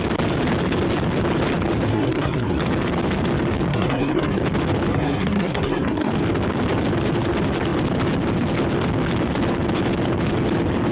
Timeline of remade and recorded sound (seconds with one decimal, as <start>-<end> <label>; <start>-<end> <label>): 0.0-1.9 recorded; 1.9-2.6 remade; 2.6-3.7 recorded; 3.7-4.4 remade; 4.4-4.9 recorded; 4.9-6.1 remade; 6.1-10.9 recorded

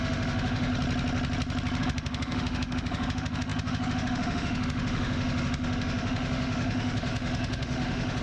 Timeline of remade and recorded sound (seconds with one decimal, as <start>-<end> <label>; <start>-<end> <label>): 0.0-0.7 remade; 0.7-1.8 recorded; 1.8-8.2 remade

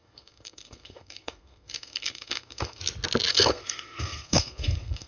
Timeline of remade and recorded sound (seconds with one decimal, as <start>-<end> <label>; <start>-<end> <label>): 0.0-2.8 remade; 2.8-3.3 recorded; 3.3-5.1 remade

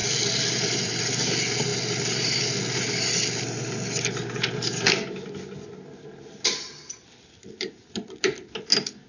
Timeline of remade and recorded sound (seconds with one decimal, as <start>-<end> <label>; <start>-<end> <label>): 0.0-1.0 remade; 1.0-9.1 recorded